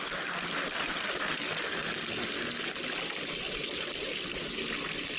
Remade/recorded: recorded